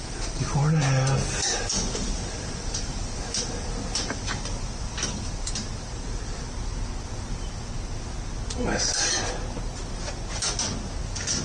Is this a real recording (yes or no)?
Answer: yes